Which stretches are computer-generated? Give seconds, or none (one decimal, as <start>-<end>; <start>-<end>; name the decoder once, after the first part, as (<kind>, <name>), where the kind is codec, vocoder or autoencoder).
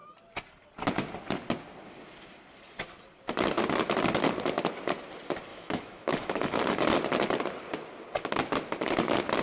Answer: 5.5-6.6 (autoencoder, DAC-VAE)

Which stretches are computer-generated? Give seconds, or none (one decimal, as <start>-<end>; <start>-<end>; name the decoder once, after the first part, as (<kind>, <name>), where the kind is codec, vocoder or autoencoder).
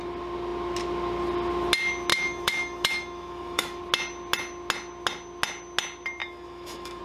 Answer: 2.1-3.8 (autoencoder, DAC-VAE); 6.2-7.0